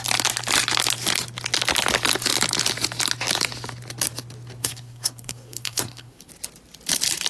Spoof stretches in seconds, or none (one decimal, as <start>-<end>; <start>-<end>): 4.6-6.3